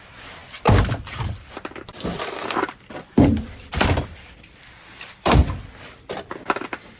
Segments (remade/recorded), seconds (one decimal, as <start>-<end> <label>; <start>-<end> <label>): 0.0-5.4 remade; 5.4-6.2 recorded; 6.2-7.0 remade